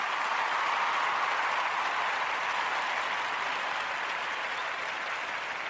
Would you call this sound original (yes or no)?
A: yes